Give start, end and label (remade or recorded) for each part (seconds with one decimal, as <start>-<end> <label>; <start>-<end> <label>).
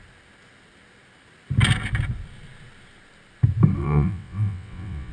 0.0-3.8 recorded; 3.8-5.1 remade